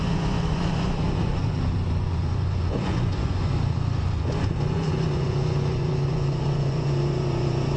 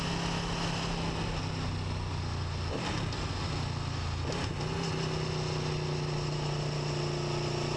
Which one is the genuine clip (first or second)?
second